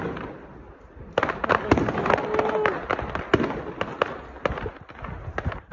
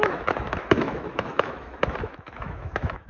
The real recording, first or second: first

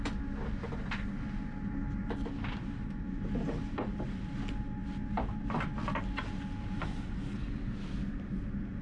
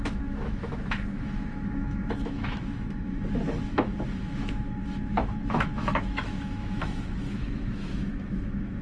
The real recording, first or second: first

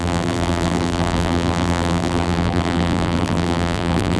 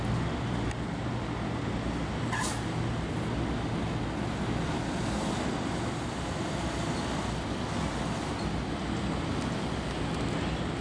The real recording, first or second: second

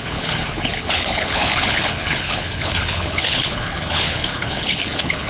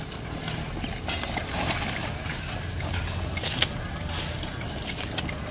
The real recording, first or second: second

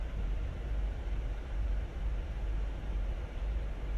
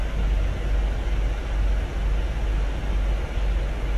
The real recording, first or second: second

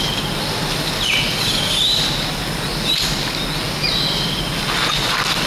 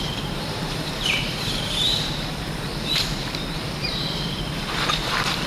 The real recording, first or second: first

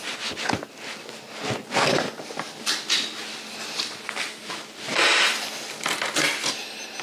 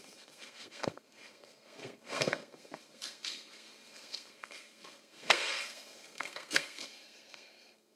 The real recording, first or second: first